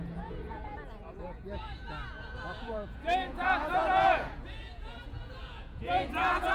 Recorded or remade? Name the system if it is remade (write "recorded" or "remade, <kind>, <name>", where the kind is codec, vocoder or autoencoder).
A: remade, vocoder, Vocos